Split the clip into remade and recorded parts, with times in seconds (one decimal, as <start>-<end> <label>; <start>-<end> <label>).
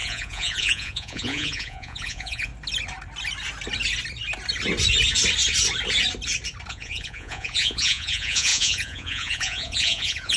0.0-2.5 remade; 2.5-6.7 recorded; 6.7-10.4 remade